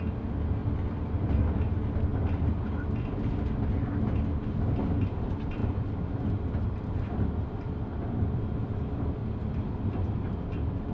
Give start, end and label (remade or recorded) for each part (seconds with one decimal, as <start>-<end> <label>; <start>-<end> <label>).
0.0-0.6 remade; 0.6-1.4 recorded; 1.4-2.1 remade; 2.1-4.4 recorded; 4.4-9.2 remade; 9.2-9.9 recorded; 9.9-10.9 remade